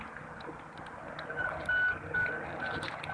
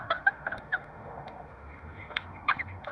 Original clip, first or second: first